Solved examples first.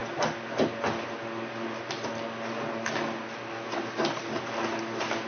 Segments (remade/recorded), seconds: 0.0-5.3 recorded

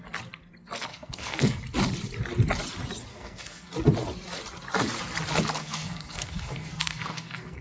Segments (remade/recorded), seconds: 0.0-0.9 recorded; 0.9-1.6 remade; 1.6-3.1 recorded; 3.1-3.7 remade; 3.7-5.6 recorded; 5.6-7.6 remade

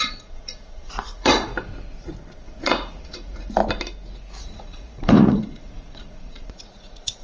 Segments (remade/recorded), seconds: 0.0-1.5 remade; 1.5-2.4 recorded; 2.4-3.6 remade; 3.6-4.4 recorded; 4.4-7.2 remade

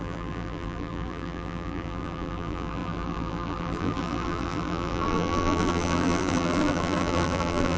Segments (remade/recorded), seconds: 0.0-7.8 remade

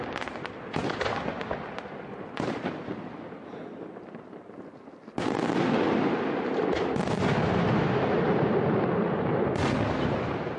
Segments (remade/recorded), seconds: 0.0-10.6 recorded

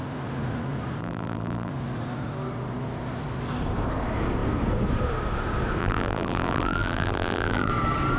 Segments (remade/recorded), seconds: 0.0-1.0 recorded; 1.0-1.7 remade; 1.7-5.8 recorded; 5.8-7.7 remade; 7.7-8.2 recorded